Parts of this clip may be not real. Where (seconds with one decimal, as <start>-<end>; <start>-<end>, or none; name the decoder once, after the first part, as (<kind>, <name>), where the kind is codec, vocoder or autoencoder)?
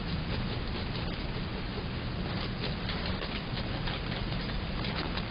4.2-5.3 (vocoder, BigVGAN v2)